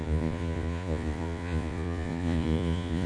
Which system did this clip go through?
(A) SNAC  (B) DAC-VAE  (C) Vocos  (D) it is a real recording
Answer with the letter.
C